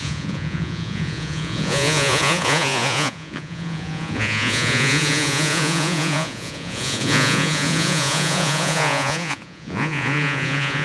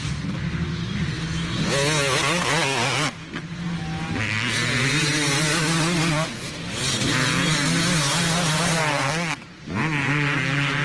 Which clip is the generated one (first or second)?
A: first